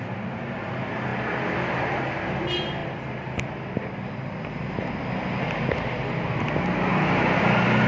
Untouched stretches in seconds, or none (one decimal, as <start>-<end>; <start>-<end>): 0.0-1.1; 2.0-2.8; 3.8-6.9; 7.4-7.9